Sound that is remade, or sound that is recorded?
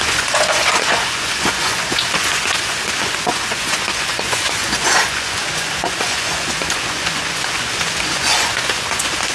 remade